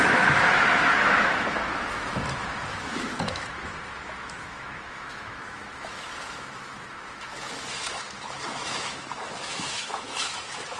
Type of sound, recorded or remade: remade